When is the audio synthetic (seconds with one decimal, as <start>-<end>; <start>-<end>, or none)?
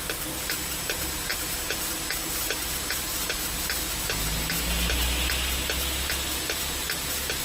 none